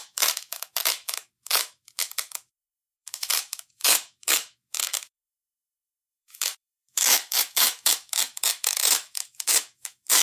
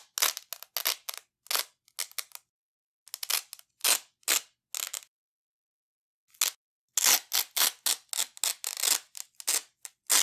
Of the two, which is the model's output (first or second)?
first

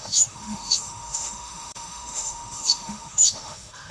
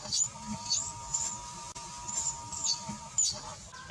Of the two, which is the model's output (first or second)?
first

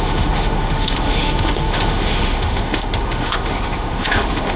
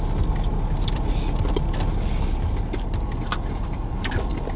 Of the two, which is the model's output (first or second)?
first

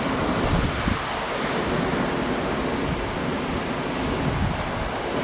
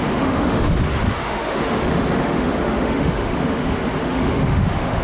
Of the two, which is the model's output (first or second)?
second